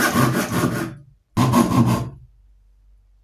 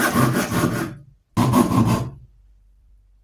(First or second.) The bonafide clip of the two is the first